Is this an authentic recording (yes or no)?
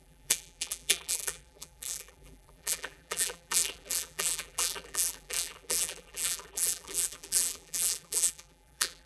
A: no